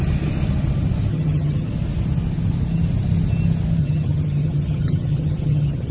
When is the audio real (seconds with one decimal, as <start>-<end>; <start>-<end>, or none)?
0.0-1.1; 1.7-3.8